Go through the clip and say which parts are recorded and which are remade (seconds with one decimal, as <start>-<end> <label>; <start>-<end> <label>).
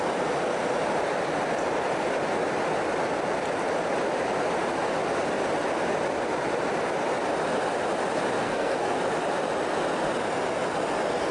0.0-8.4 recorded; 8.4-9.0 remade; 9.0-11.3 recorded